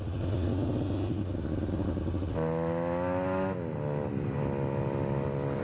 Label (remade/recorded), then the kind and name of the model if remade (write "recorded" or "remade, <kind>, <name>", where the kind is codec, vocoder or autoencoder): recorded